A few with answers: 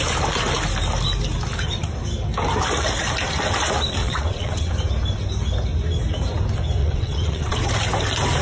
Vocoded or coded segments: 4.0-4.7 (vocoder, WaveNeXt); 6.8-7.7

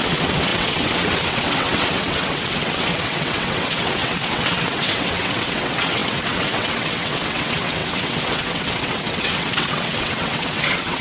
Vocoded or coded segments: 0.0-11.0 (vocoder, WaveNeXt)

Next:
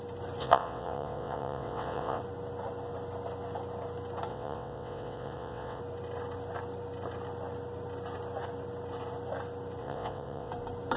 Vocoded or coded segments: 0.4-2.2 (vocoder, WaveNeXt); 4.3-5.8; 9.8-10.5

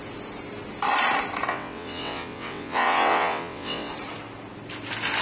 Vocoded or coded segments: 1.5-3.9 (vocoder, WaveNeXt)